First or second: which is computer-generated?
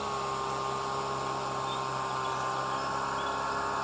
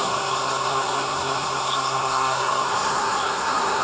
second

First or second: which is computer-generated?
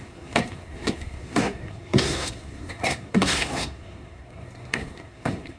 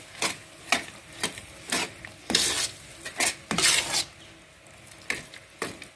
first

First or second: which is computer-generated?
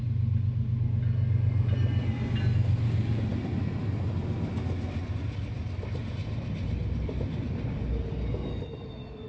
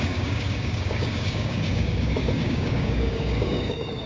second